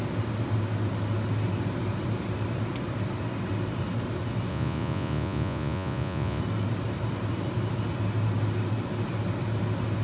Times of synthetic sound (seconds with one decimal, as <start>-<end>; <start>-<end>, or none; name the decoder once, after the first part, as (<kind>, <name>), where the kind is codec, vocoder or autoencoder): 4.5-6.4 (vocoder, Vocos)